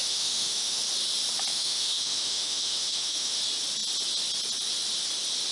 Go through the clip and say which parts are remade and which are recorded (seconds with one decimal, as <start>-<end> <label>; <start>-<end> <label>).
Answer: 0.0-0.8 remade; 0.8-1.5 recorded; 1.5-3.4 remade; 3.4-5.5 recorded